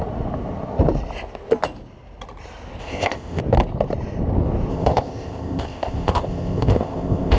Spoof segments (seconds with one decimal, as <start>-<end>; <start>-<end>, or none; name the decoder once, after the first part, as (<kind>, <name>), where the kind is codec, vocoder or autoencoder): 2.8-3.4 (codec, ZipCodec); 4.7-7.4